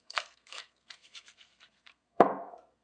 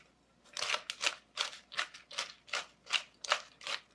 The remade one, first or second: first